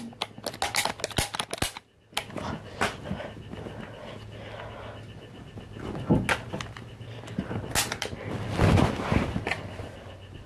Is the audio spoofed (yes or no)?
no